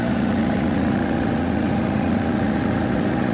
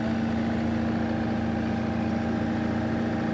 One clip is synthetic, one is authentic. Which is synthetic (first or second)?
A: first